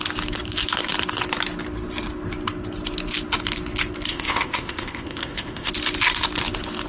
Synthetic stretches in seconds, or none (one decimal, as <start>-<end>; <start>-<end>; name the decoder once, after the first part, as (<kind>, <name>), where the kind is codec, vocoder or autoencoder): 4.1-5.7 (codec, ZipCodec)